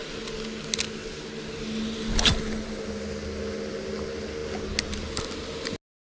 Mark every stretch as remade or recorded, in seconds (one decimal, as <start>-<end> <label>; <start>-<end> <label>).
0.0-6.1 recorded